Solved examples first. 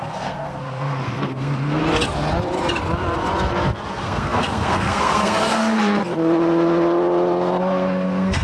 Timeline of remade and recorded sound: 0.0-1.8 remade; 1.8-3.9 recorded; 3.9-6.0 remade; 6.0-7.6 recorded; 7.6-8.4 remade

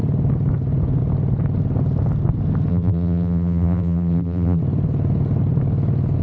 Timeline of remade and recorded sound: 0.0-2.7 recorded; 2.7-4.6 remade; 4.6-6.2 recorded

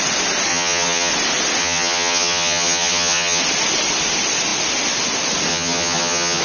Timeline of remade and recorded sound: 0.0-0.5 recorded; 0.5-1.1 remade; 1.1-1.6 recorded; 1.6-3.4 remade; 3.4-5.5 recorded; 5.5-6.4 remade

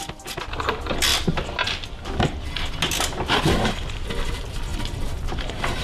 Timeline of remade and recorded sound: 0.0-5.8 recorded

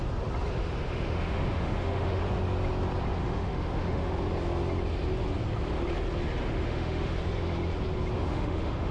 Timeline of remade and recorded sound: 0.0-0.6 recorded; 0.6-2.2 remade; 2.2-3.2 recorded; 3.2-4.1 remade; 4.1-6.4 recorded; 6.4-7.2 remade; 7.2-8.1 recorded; 8.1-8.9 remade

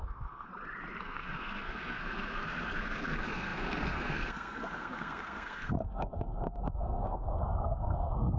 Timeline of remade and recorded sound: 0.0-0.5 remade; 0.5-1.0 recorded; 1.0-8.4 remade